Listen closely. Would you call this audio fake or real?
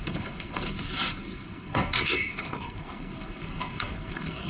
fake